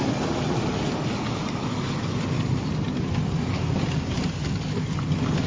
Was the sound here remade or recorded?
recorded